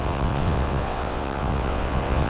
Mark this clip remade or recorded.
remade